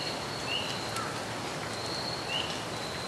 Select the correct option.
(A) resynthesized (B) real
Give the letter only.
B